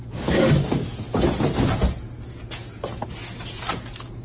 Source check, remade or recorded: recorded